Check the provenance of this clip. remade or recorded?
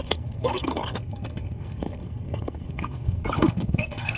remade